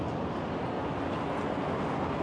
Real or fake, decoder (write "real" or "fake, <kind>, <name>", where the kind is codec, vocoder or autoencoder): real